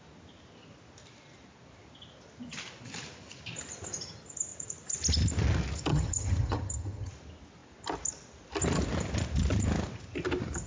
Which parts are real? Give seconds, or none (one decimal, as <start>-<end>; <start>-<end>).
0.0-5.9; 7.1-10.7